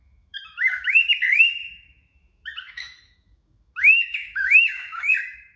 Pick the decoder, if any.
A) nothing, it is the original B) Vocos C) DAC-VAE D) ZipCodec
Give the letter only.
C